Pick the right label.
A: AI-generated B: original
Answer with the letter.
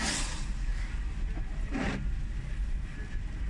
B